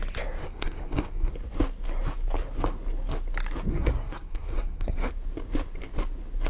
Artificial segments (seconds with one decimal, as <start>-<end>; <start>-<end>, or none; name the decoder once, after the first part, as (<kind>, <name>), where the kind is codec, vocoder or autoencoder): 0.4-1.3 (codec, SNAC); 3.7-5.1